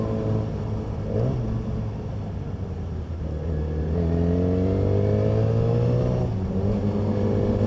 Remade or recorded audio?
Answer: recorded